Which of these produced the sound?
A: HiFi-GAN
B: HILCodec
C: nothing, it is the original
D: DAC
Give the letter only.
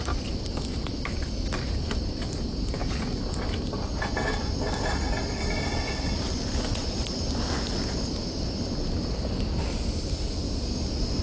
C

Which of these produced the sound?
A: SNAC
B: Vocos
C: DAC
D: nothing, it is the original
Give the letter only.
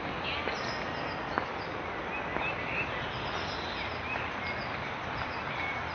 D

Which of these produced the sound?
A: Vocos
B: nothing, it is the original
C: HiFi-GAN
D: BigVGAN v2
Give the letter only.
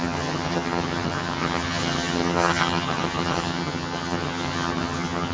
C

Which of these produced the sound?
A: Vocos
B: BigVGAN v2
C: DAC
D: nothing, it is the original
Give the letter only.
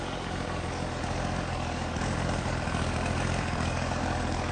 C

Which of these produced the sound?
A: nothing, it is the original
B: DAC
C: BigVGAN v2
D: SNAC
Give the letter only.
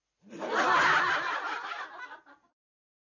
A